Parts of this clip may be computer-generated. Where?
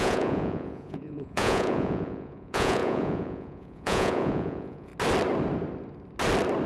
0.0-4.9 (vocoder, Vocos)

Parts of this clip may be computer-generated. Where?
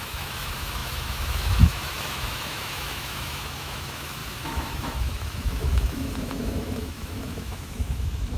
0.0-8.4 (autoencoder, DAC-VAE)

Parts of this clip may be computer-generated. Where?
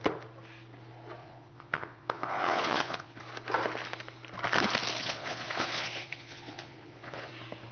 1.2-3.2 (vocoder, Vocos); 5.0-7.3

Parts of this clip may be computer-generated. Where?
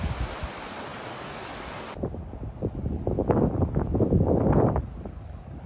none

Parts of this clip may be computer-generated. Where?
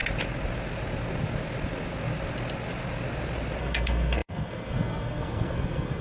3.6-6.0 (codec, SNAC)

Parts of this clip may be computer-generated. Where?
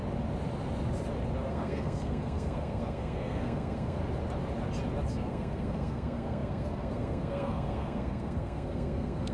1.5-4.0 (codec, SNAC); 5.1-9.3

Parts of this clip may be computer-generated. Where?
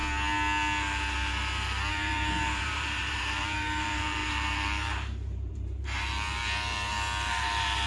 1.9-7.9 (vocoder, BigVGAN v2)